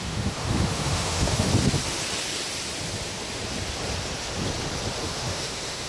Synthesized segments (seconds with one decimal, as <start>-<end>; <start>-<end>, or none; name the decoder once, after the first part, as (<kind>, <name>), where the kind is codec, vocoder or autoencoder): 0.0-1.5 (autoencoder, DAC-VAE); 5.0-5.9